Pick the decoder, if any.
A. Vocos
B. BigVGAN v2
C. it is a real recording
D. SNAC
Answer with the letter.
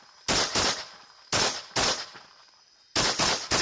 C